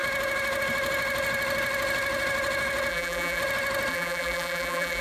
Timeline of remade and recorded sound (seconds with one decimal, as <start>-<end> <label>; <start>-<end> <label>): 0.0-2.9 recorded; 2.9-3.4 remade; 3.4-3.9 recorded; 3.9-5.0 remade